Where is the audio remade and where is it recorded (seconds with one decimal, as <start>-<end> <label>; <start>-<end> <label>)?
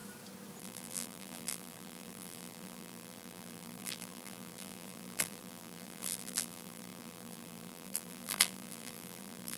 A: 0.0-0.6 recorded; 0.6-9.6 remade